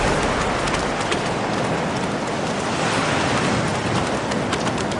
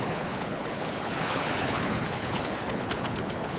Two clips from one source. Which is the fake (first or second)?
second